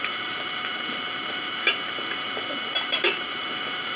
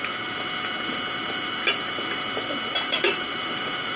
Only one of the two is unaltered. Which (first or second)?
second